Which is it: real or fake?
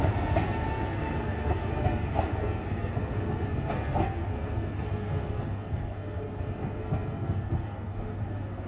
fake